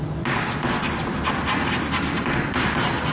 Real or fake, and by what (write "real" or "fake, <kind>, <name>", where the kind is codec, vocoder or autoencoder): real